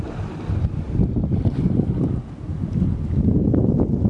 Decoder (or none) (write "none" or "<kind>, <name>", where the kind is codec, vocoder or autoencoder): none